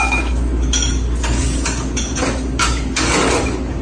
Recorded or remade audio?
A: remade